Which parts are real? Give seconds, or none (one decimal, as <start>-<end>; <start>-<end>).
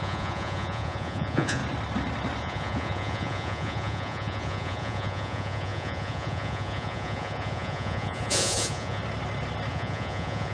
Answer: 1.6-2.4; 9.0-9.7